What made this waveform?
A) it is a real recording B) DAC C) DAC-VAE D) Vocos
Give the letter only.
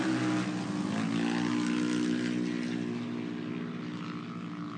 A